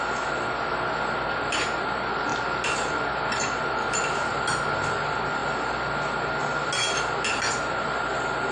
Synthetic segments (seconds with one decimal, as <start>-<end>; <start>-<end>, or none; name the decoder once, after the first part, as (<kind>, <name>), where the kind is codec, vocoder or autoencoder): none